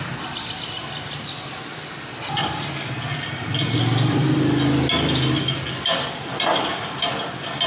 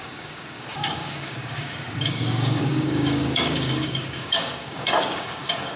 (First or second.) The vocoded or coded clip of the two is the second